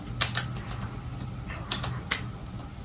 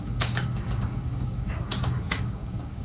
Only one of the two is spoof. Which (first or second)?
second